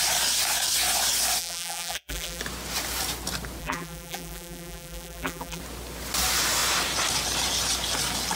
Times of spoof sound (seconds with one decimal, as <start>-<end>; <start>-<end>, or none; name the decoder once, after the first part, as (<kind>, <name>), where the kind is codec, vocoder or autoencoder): 1.4-2.4 (vocoder, BigVGAN v2); 3.6-5.6